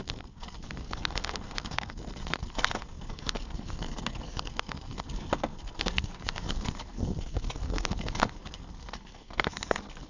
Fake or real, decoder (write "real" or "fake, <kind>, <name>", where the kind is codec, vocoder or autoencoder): fake, codec, SNAC